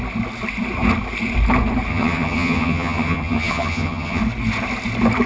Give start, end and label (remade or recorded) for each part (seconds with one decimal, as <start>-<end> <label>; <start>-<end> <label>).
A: 0.0-1.9 recorded; 1.9-4.2 remade; 4.2-5.3 recorded